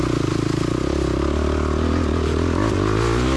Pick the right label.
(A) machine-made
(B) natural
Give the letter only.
B